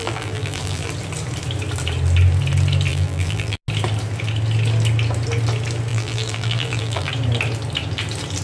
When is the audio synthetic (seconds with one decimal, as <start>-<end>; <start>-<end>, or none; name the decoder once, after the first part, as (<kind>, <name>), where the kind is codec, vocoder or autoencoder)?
0.0-0.9 (vocoder, BigVGAN v2); 2.9-3.6; 5.9-7.1